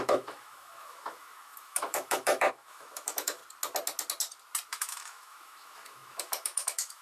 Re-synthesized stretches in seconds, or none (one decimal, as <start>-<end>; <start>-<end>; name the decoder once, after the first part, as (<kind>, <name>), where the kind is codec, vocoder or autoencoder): 0.0-3.4 (autoencoder, DAC-VAE); 4.7-7.0